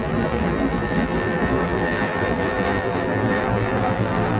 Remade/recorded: remade